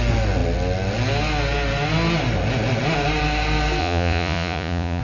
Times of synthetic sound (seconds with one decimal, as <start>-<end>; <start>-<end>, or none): 3.8-5.0